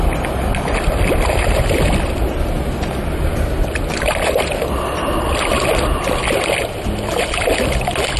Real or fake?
real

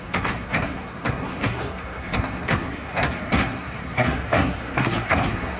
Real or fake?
fake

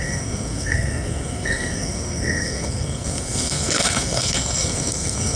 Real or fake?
fake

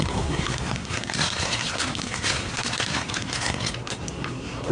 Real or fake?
fake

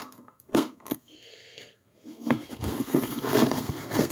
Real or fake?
fake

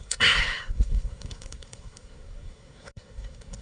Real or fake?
fake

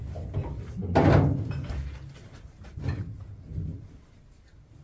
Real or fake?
real